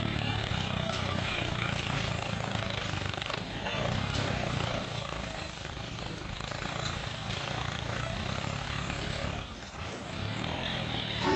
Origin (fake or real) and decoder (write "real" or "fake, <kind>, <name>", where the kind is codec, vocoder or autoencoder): fake, codec, DAC